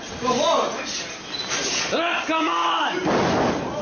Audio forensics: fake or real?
real